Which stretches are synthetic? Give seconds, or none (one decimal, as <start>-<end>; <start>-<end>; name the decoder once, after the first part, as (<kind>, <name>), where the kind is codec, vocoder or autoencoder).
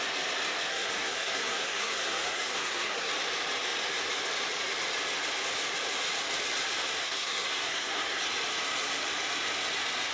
0.7-3.1 (codec, SNAC); 7.0-8.2